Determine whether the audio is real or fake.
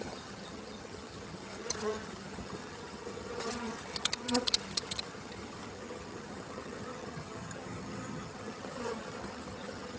fake